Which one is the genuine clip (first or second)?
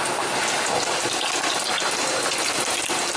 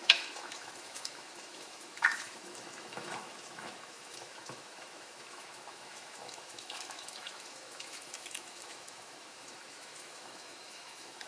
first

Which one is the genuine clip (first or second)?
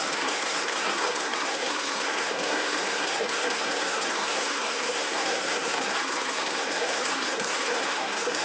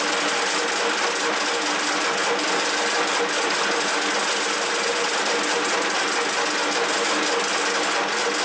second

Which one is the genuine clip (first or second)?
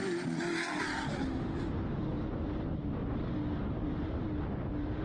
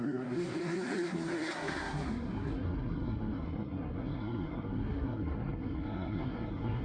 first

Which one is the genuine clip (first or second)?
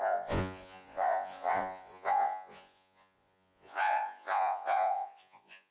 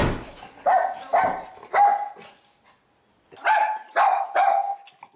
second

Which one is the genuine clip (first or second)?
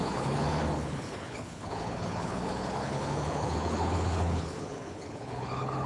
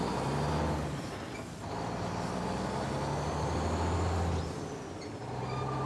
second